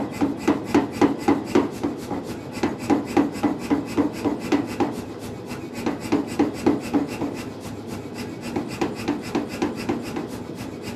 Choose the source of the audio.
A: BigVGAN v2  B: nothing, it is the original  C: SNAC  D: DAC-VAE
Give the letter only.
B